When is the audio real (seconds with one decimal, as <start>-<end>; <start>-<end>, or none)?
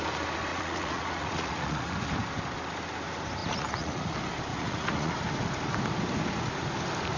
0.0-0.5; 1.9-3.4; 4.1-4.5; 5.1-7.2